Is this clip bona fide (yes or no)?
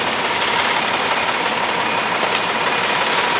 yes